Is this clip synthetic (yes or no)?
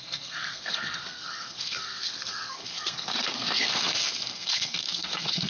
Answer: yes